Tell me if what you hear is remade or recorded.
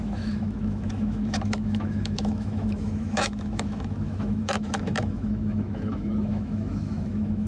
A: remade